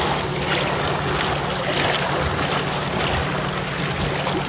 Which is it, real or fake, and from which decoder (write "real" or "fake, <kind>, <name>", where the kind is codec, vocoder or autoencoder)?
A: real